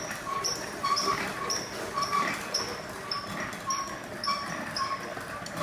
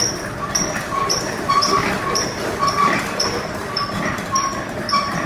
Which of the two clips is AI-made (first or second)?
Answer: second